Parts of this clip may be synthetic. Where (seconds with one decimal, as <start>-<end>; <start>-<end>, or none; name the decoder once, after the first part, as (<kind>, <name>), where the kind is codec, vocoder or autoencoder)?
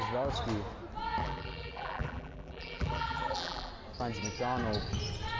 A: 1.2-3.7 (vocoder, BigVGAN v2)